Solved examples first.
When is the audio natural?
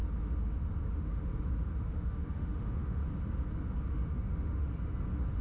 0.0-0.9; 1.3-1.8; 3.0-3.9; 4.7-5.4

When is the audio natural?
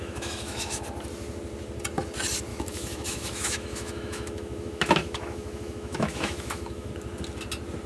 0.8-2.5; 6.9-7.9